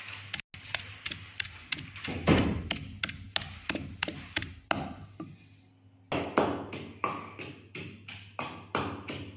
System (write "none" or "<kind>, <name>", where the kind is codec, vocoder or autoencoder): none